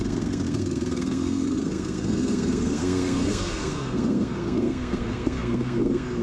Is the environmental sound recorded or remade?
remade